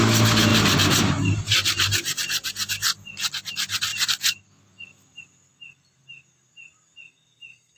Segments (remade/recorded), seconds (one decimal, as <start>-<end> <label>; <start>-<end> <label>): 0.0-0.5 recorded; 0.5-1.1 remade; 1.1-3.9 recorded; 3.9-5.2 remade; 5.2-7.8 recorded